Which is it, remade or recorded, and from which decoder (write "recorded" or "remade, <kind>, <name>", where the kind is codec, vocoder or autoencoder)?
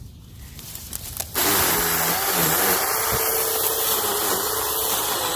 recorded